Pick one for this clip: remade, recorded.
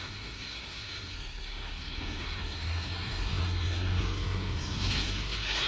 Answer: remade